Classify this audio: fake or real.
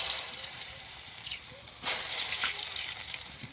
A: fake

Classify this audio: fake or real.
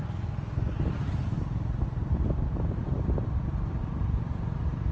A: fake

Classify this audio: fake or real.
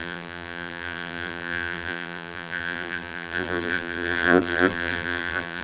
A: fake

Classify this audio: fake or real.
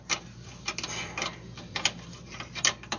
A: real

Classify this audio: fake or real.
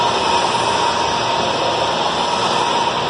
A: real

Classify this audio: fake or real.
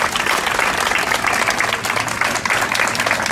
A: real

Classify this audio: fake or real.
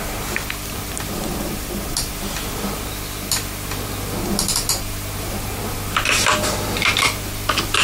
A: real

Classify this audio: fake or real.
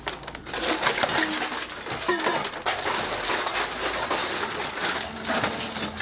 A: real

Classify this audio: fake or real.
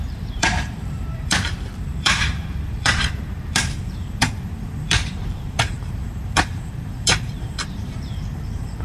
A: fake